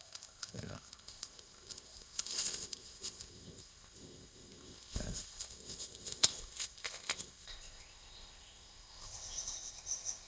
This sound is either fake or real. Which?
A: fake